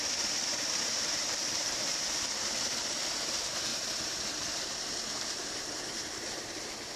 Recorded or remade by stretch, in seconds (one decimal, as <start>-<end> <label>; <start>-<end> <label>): 0.0-0.5 recorded; 0.5-2.2 remade; 2.2-3.7 recorded; 3.7-4.6 remade; 4.6-7.0 recorded